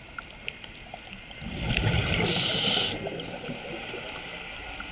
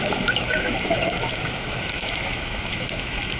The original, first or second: first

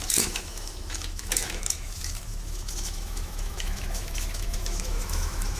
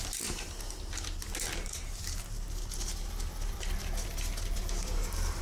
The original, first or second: second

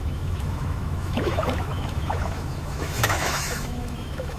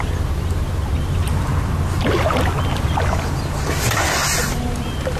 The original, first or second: second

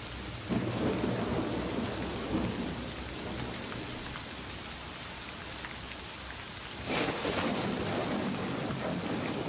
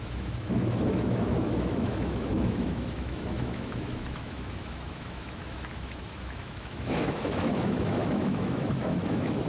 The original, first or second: first